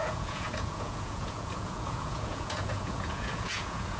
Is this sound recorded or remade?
remade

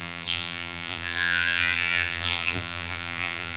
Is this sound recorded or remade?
remade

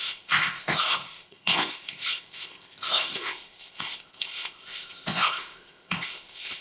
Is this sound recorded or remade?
remade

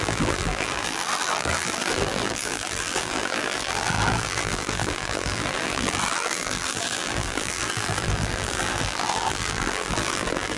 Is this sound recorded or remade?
remade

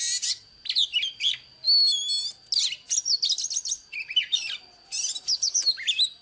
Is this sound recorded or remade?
recorded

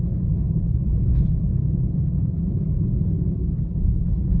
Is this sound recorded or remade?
remade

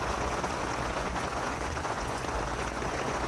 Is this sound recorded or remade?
remade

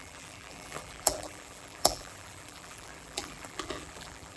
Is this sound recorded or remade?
remade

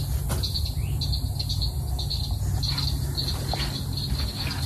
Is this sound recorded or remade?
recorded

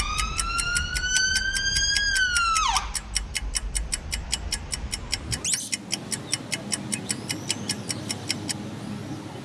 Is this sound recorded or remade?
recorded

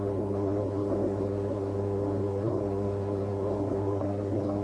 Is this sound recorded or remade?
remade